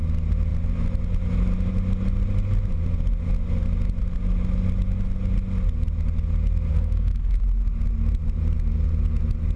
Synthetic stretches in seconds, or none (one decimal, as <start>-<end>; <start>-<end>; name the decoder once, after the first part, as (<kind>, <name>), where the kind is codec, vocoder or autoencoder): 6.7-7.4 (codec, SNAC)